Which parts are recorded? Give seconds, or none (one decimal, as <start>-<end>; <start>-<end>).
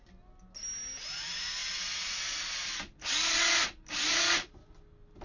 0.0-5.2